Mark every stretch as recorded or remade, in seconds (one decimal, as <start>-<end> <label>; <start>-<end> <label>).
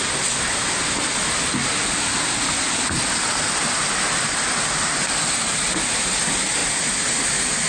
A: 0.0-7.7 recorded